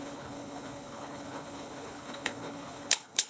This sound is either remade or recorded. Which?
remade